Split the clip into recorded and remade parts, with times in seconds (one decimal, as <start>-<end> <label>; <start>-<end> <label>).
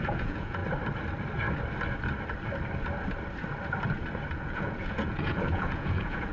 0.0-0.6 remade; 0.6-4.4 recorded; 4.4-6.3 remade